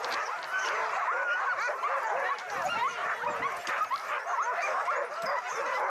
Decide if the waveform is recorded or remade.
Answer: recorded